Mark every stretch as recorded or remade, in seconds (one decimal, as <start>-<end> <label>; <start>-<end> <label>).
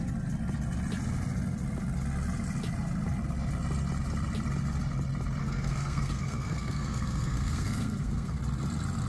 0.0-5.4 recorded; 5.4-8.4 remade; 8.4-9.1 recorded